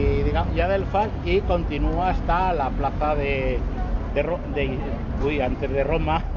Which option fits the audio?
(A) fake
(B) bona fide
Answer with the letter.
B